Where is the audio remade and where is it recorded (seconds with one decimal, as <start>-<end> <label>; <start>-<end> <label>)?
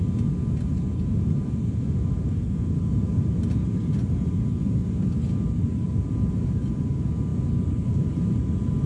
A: 0.0-0.7 recorded; 0.7-4.8 remade; 4.8-5.7 recorded; 5.7-6.6 remade; 6.6-7.3 recorded; 7.3-8.5 remade; 8.5-8.9 recorded